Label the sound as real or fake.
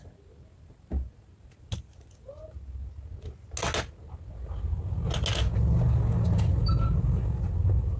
real